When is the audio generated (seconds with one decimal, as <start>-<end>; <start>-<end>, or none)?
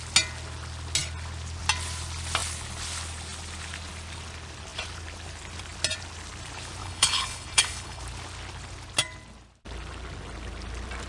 6.8-8.0